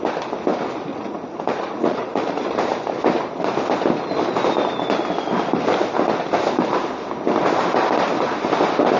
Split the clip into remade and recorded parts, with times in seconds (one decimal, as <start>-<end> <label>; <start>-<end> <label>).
0.0-0.9 recorded; 0.9-2.5 remade; 2.5-9.0 recorded